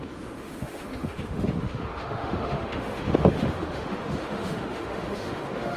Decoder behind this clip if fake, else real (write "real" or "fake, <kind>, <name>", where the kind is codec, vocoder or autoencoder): fake, autoencoder, DAC-VAE